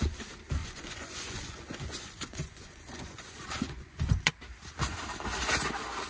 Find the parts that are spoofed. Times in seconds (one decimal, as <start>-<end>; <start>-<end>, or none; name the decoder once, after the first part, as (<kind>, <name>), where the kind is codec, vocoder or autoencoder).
0.6-4.3 (vocoder, Vocos)